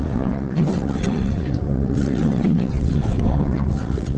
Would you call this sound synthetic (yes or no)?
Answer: yes